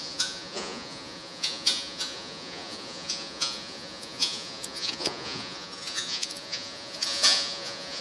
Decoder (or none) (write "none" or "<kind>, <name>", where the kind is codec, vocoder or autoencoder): vocoder, Vocos